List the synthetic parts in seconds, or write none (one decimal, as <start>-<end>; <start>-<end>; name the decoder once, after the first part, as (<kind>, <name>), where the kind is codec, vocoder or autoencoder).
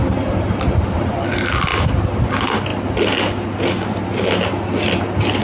none